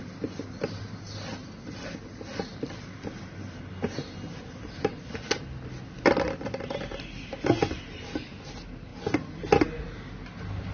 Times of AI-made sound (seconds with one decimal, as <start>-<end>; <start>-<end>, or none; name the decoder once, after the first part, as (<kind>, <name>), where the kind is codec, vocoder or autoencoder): none